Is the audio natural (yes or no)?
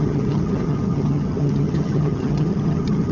no